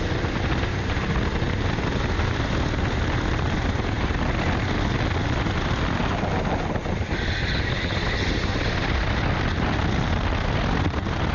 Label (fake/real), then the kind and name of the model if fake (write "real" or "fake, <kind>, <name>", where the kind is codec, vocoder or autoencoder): real